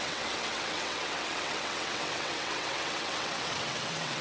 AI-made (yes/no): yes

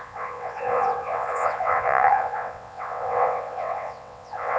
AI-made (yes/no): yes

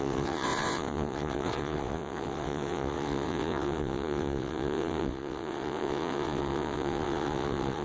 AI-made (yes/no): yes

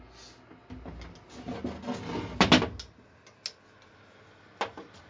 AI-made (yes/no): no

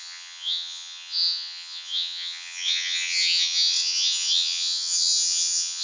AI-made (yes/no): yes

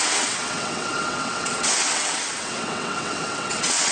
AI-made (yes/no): yes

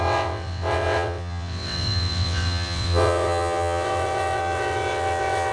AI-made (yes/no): yes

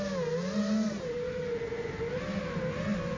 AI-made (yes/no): no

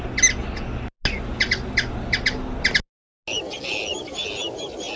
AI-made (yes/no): no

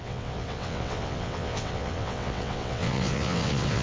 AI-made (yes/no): yes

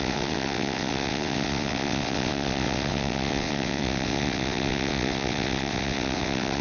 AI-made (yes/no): yes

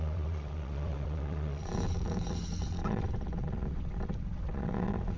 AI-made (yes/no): yes